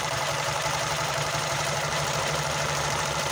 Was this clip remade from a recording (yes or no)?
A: yes